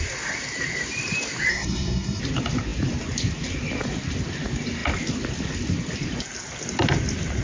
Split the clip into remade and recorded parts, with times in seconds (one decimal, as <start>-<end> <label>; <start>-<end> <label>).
0.0-1.5 recorded; 1.5-2.2 remade; 2.2-7.4 recorded